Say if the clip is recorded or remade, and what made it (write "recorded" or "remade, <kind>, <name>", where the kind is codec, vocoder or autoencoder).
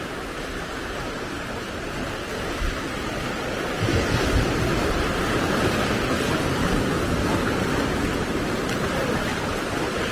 recorded